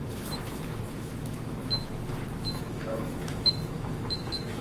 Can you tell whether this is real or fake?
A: fake